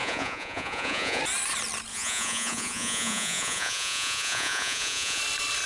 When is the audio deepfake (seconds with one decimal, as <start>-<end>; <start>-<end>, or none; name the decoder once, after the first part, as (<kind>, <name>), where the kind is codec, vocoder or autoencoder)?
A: 0.0-1.2 (vocoder, Vocos); 1.9-5.2

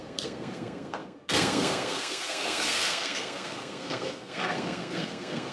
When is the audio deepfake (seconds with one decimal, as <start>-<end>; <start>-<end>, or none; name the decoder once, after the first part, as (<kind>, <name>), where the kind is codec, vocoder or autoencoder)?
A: 0.0-5.5 (codec, SNAC)

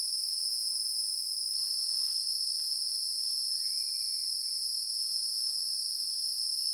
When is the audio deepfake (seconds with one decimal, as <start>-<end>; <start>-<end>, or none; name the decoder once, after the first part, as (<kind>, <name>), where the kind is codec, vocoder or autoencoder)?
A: 0.5-1.1 (vocoder, Vocos); 4.7-5.5

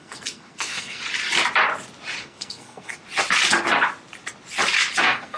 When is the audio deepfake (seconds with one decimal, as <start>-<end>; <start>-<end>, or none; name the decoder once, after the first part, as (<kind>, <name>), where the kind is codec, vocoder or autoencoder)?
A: 0.0-1.0 (codec, SNAC); 2.2-3.0; 5.0-5.4

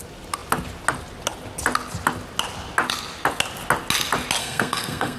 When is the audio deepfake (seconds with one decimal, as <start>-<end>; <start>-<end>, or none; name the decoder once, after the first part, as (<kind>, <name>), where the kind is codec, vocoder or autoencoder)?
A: 4.4-5.2 (codec, SNAC)

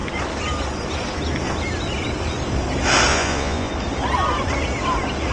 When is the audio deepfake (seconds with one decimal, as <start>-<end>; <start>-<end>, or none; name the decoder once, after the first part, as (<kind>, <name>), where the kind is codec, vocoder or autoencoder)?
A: 3.1-3.7 (vocoder, Vocos)

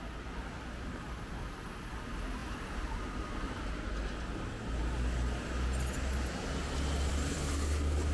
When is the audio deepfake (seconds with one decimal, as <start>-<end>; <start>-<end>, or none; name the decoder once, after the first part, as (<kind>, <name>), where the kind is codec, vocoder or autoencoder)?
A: none